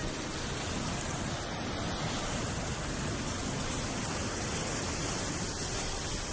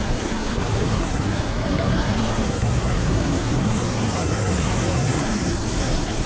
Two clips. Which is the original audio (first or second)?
first